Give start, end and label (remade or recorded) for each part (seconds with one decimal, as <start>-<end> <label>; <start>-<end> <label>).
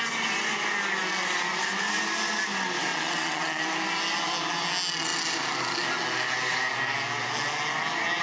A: 0.0-2.9 recorded; 2.9-3.6 remade; 3.6-8.2 recorded